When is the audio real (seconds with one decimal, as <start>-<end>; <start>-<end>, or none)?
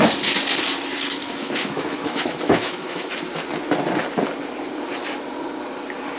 0.0-1.2; 3.1-6.2